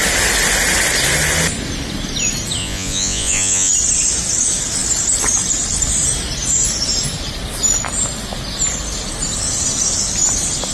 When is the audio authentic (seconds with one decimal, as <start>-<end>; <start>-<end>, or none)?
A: 0.0-2.6; 3.7-10.7